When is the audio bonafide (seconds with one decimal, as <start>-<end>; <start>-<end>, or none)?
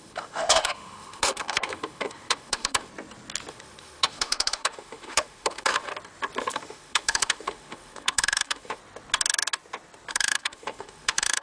2.9-3.5; 5.9-6.5; 8.8-10.1